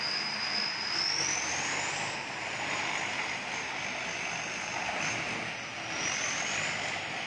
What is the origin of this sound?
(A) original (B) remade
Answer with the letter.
A